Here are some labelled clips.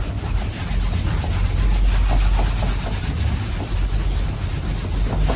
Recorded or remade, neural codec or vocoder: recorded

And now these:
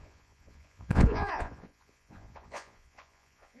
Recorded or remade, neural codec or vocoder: remade, vocoder, Vocos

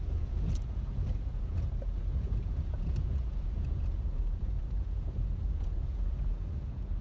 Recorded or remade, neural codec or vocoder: remade, vocoder, Vocos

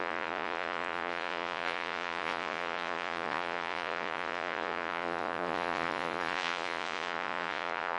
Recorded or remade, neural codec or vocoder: remade, vocoder, Vocos